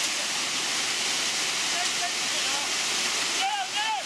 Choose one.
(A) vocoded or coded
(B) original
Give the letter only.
B